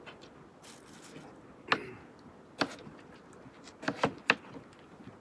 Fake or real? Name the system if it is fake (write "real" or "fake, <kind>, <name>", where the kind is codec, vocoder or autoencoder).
real